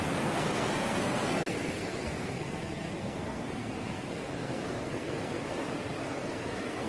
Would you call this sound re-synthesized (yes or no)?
yes